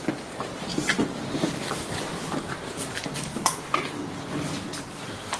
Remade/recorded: recorded